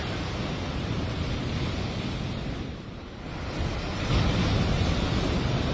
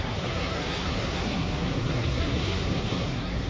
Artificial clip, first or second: second